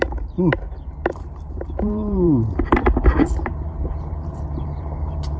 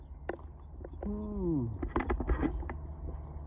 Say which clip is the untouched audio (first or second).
second